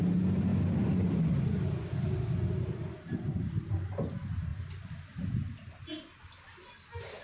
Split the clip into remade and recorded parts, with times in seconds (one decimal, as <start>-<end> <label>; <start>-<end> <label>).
0.0-7.2 recorded